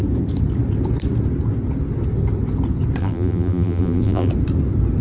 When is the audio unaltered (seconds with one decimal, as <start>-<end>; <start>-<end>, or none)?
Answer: 0.0-3.0; 4.3-5.0